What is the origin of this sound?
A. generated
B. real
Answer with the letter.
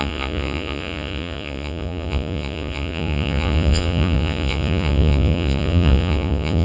A